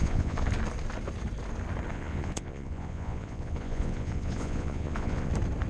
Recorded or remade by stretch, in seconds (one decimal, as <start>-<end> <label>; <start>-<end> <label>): 0.0-0.5 remade; 0.5-1.9 recorded; 1.9-5.3 remade; 5.3-5.7 recorded